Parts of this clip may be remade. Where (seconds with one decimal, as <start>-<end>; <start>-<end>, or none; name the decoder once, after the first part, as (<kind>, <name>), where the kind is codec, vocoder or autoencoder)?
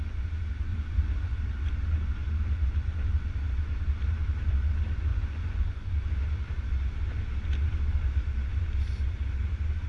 0.7-1.3 (vocoder, Vocos); 5.1-5.9